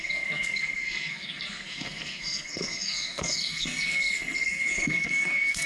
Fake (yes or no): yes